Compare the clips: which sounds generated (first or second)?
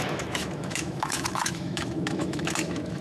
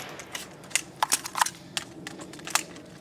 first